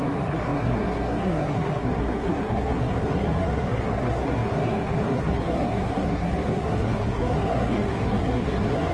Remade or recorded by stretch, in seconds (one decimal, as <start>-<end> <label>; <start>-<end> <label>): 0.0-8.9 remade